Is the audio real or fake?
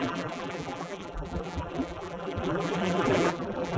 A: fake